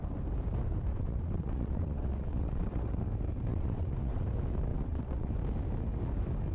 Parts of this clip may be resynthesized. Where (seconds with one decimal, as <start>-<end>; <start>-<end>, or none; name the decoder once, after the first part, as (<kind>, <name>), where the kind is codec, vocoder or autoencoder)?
0.9-3.0 (vocoder, WaveNeXt); 3.5-4.2; 4.7-5.3